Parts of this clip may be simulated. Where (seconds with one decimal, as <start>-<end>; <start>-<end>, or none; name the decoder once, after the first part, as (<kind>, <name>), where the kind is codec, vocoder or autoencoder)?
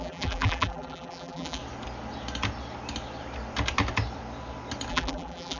0.0-1.6 (vocoder, BigVGAN v2); 4.9-5.6